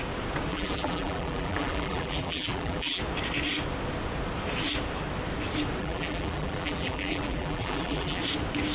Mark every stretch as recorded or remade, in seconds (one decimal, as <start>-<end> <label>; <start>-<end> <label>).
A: 0.0-0.5 recorded; 0.5-3.0 remade; 3.0-5.8 recorded; 5.8-8.2 remade; 8.2-8.7 recorded